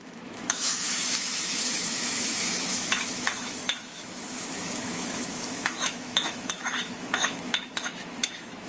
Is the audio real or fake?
fake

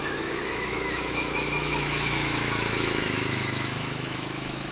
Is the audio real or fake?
fake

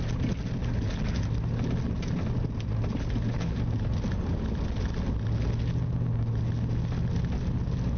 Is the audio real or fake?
real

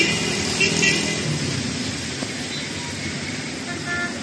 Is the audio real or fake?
real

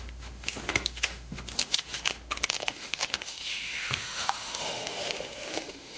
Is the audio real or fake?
fake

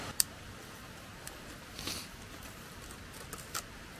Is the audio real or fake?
real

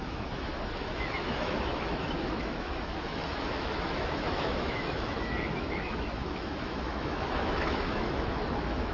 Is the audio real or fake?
fake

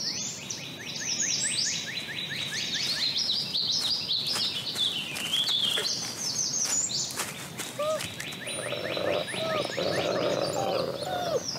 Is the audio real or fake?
real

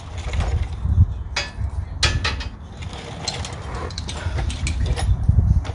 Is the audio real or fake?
real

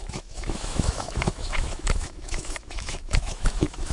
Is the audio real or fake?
fake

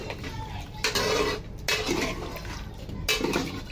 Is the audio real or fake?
real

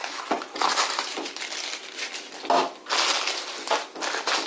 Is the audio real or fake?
real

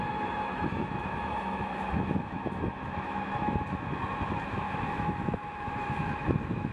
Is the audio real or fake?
fake